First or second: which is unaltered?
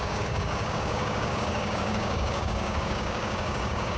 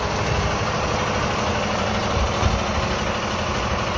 second